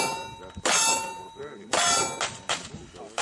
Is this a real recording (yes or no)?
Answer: yes